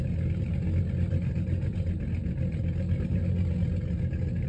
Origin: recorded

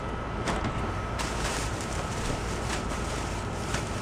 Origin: remade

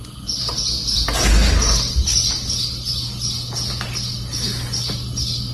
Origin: recorded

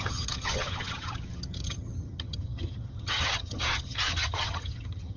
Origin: remade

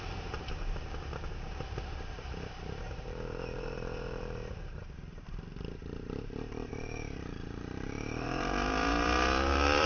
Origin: remade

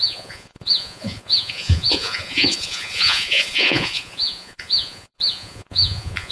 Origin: remade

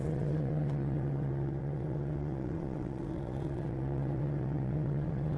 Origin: remade